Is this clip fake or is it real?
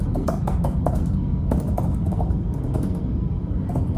fake